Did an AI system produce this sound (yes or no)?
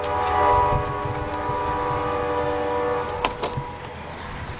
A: no